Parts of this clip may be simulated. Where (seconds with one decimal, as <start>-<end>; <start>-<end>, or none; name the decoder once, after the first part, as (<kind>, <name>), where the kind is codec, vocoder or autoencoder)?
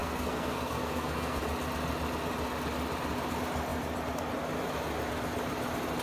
0.0-1.4 (codec, SNAC)